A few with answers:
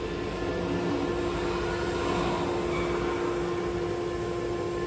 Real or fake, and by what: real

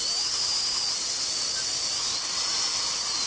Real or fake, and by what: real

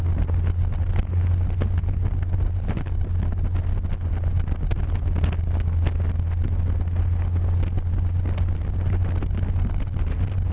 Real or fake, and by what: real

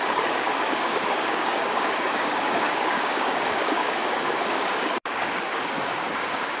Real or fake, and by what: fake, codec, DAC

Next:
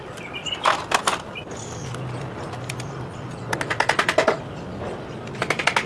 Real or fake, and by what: real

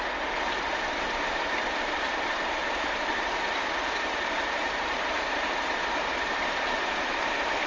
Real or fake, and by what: fake, vocoder, BigVGAN v2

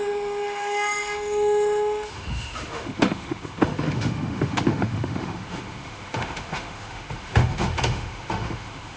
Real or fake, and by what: fake, autoencoder, DAC-VAE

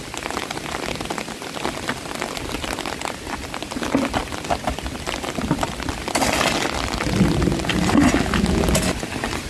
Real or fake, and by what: real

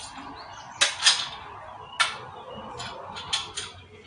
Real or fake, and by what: real